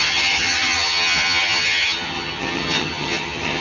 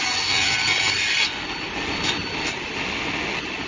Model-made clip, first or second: first